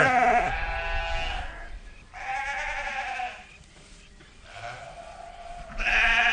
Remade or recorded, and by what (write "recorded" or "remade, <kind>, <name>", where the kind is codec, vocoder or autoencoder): recorded